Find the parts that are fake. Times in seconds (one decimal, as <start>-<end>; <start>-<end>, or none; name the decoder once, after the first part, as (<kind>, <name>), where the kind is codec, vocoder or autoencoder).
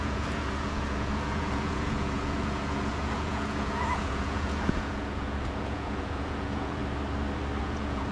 0.0-6.8 (vocoder, Vocos); 7.6-8.1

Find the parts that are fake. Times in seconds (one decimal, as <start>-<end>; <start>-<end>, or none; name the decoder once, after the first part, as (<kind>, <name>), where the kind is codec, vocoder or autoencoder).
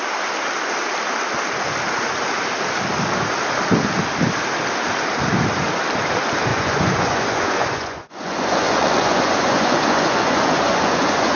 6.5-11.4 (vocoder, Vocos)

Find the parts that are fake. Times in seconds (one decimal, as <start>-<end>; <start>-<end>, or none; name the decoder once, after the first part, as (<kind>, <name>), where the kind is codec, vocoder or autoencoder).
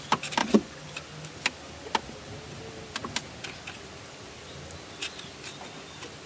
0.4-0.9 (vocoder, Vocos)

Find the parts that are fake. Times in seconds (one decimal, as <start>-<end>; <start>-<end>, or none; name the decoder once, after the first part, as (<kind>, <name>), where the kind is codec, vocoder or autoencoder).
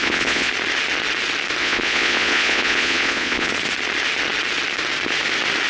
0.0-0.5 (vocoder, Vocos); 1.6-3.5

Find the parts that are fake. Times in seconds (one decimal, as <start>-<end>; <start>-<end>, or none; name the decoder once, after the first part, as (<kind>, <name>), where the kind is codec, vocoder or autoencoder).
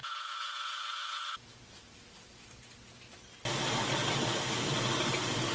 0.0-2.6 (vocoder, Vocos)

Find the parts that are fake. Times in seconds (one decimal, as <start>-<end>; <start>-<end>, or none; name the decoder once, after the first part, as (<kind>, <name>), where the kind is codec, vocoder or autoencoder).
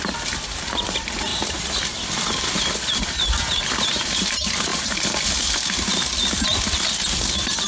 none